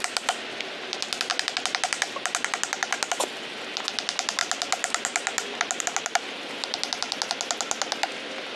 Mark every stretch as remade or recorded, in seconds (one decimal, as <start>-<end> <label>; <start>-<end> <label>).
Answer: 0.0-8.6 recorded